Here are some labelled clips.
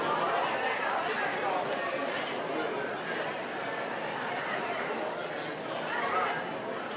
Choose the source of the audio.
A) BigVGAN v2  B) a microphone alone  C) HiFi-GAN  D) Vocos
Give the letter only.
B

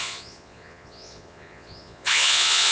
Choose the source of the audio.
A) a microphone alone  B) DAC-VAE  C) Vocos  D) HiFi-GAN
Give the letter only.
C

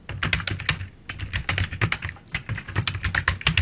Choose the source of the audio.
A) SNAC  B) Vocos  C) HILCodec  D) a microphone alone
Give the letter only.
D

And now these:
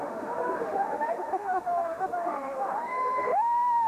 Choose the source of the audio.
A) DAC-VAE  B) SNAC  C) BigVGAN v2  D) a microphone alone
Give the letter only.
A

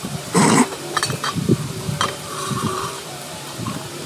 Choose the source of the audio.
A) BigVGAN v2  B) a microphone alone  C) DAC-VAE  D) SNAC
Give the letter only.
A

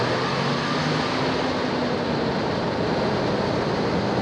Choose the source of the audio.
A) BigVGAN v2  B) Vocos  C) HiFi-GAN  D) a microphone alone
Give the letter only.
D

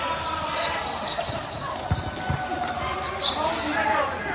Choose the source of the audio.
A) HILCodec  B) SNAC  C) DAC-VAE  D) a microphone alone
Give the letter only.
D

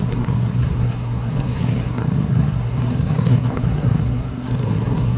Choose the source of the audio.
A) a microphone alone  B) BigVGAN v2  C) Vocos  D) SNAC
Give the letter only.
D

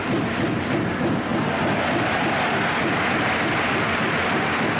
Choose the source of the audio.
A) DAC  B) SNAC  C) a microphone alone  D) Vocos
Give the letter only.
C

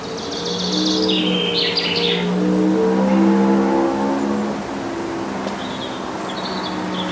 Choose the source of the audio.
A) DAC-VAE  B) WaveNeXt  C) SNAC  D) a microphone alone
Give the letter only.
D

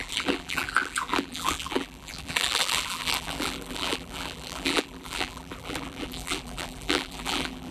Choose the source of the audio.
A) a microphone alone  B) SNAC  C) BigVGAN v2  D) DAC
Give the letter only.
C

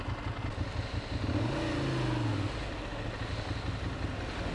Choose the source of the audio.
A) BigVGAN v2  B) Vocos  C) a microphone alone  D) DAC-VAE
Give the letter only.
C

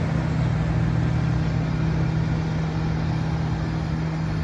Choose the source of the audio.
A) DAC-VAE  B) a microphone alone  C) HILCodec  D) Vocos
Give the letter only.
B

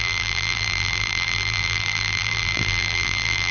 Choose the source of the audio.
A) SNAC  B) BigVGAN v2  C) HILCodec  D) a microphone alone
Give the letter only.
B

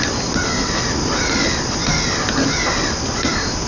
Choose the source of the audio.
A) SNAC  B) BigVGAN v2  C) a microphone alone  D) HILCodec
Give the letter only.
C